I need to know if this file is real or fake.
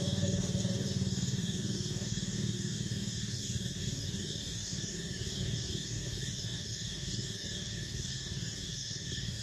fake